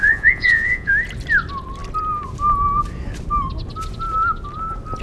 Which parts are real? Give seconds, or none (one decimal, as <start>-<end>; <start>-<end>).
0.9-5.0